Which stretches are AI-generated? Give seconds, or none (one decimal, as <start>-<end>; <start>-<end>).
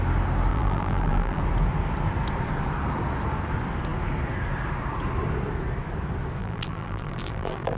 0.5-1.4; 6.4-7.8